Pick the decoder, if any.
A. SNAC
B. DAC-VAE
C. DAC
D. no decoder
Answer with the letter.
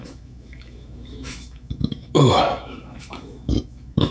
B